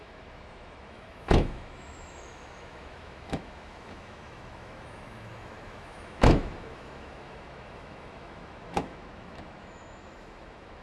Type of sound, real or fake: fake